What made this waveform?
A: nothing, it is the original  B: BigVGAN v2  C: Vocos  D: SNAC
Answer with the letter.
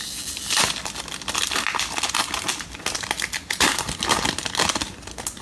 A